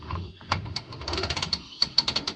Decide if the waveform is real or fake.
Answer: fake